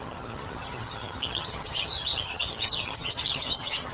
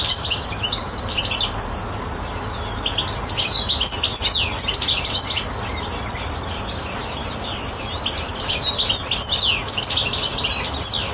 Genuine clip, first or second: second